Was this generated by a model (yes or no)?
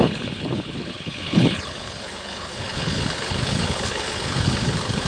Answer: yes